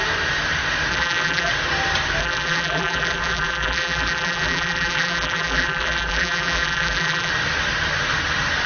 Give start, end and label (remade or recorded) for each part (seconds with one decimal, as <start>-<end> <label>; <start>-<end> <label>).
0.0-0.9 recorded; 0.9-1.5 remade; 1.5-2.2 recorded; 2.2-7.3 remade; 7.3-8.7 recorded